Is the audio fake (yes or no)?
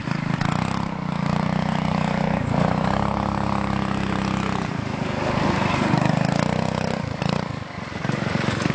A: yes